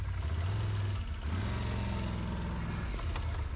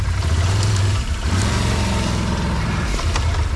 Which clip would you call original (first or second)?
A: first